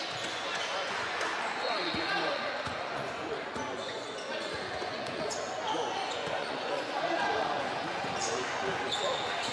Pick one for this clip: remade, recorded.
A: remade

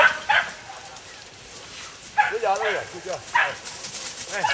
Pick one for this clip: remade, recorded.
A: recorded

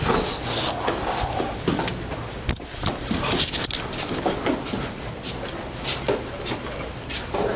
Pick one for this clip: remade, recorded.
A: recorded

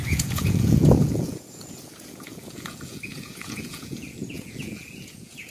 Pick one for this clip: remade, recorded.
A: remade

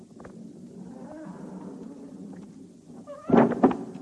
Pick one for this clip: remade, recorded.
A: recorded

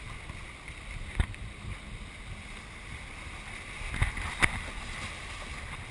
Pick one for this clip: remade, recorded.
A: recorded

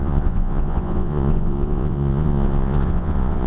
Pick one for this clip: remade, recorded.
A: remade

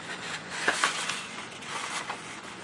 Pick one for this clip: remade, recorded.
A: remade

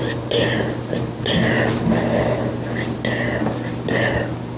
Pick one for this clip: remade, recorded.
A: recorded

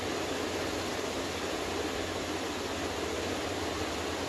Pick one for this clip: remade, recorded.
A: recorded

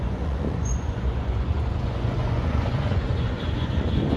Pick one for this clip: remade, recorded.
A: remade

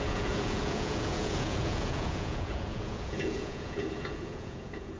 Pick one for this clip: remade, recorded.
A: remade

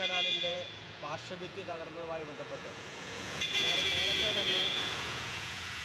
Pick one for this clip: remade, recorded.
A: remade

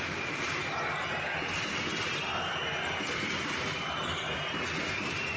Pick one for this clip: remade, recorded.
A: recorded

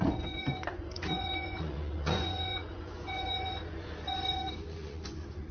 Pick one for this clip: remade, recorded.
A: remade